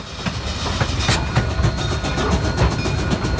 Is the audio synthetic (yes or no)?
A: no